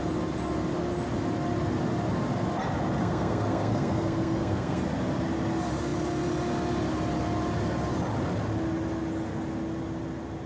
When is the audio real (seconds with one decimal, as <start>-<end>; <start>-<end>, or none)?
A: 0.0-3.0; 4.8-10.5